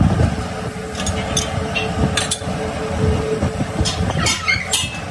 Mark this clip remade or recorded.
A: recorded